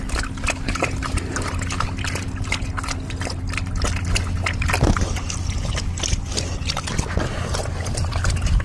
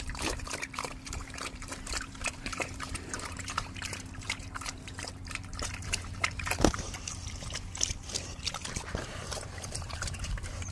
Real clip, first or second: first